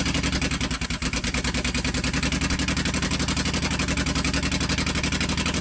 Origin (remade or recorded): recorded